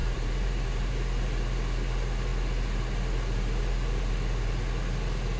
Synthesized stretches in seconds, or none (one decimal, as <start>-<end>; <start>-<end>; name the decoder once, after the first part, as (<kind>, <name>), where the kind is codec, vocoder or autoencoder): 0.0-0.9 (vocoder, BigVGAN v2)

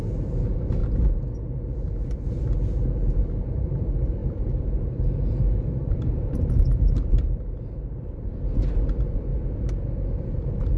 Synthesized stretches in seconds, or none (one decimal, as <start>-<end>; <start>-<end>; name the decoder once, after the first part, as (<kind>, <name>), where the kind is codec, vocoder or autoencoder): 0.0-0.8 (vocoder, BigVGAN v2); 3.2-9.3; 10.3-10.8

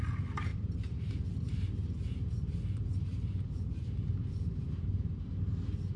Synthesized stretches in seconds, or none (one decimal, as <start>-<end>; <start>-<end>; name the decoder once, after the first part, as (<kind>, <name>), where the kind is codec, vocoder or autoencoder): 0.5-1.1 (vocoder, BigVGAN v2); 3.1-5.5

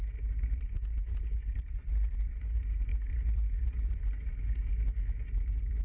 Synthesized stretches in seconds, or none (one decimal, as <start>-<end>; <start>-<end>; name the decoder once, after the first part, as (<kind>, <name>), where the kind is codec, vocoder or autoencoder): 1.4-2.4 (vocoder, BigVGAN v2); 2.9-3.9